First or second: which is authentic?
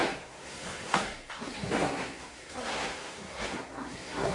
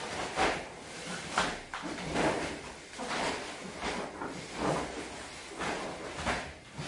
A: second